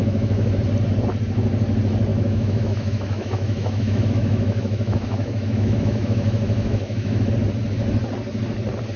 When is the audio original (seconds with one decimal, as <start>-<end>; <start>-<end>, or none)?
0.6-2.1; 7.3-9.0